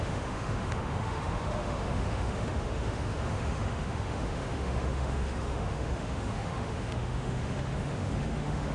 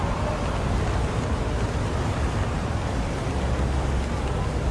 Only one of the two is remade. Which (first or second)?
first